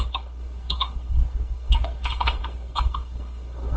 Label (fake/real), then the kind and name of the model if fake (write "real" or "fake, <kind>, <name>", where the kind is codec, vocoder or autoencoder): fake, codec, SNAC